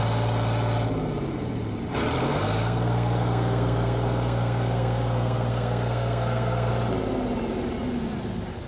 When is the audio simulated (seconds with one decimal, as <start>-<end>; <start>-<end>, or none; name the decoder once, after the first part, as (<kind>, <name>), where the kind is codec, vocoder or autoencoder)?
2.2-6.7 (codec, SNAC)